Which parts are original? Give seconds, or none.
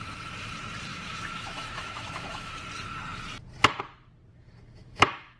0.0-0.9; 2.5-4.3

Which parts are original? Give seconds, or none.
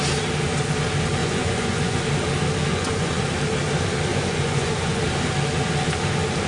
0.0-1.2; 2.0-2.7; 3.2-4.1; 5.0-6.5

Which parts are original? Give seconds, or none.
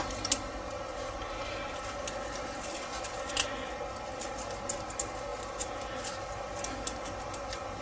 0.0-7.8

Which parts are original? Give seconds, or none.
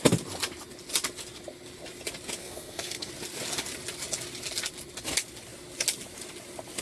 0.0-2.4; 3.1-6.8